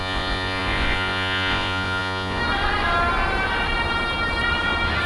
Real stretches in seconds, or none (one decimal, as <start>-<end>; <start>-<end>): 2.4-5.1